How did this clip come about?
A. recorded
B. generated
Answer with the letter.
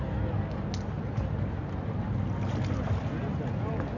A